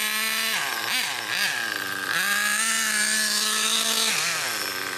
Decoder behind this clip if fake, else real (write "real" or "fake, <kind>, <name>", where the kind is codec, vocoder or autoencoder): real